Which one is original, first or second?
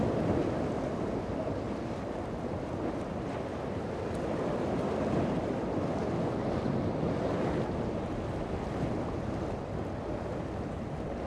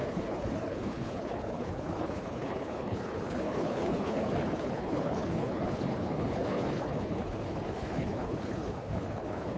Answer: first